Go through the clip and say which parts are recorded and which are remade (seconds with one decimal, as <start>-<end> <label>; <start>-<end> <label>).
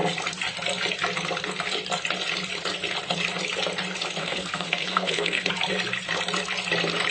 0.0-4.2 recorded; 4.2-5.5 remade; 5.5-7.1 recorded